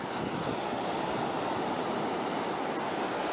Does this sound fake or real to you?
real